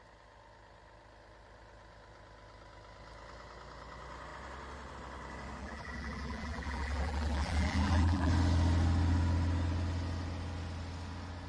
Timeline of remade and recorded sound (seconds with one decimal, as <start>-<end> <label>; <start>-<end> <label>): 0.0-5.6 recorded; 5.6-8.3 remade; 8.3-11.5 recorded